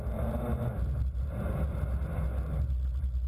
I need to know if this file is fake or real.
real